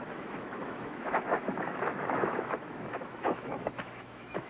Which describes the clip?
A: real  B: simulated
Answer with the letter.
B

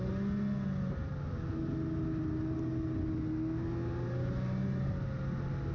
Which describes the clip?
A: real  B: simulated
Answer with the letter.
A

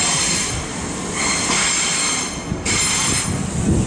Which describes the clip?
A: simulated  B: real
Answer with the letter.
B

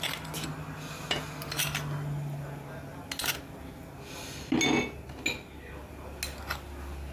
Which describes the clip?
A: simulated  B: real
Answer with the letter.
B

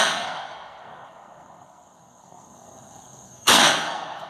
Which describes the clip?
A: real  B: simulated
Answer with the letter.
B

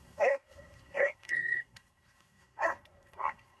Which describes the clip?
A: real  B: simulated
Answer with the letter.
B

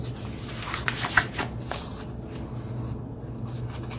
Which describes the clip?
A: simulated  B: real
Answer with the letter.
B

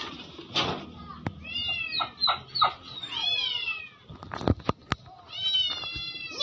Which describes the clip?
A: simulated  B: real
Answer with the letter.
B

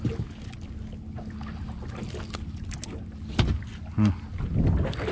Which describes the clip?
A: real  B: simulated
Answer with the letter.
A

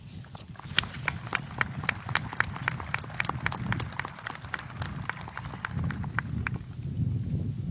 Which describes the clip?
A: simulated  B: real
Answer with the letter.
B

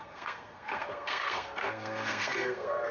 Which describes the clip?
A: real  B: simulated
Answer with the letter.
B